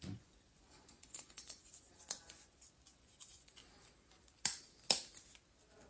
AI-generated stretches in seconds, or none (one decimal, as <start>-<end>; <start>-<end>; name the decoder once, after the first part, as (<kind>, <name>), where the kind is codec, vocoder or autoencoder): 0.0-3.6 (vocoder, Vocos)